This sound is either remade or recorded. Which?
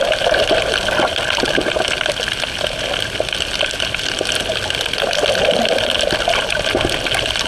recorded